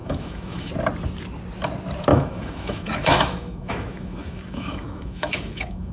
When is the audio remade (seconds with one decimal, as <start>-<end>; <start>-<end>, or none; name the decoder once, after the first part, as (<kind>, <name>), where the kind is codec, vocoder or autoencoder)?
0.0-0.7 (autoencoder, DAC-VAE); 2.1-5.9

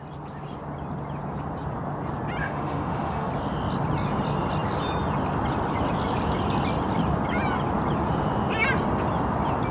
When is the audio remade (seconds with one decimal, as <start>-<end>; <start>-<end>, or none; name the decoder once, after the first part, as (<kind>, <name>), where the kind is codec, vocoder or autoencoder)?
2.4-3.3 (autoencoder, DAC-VAE)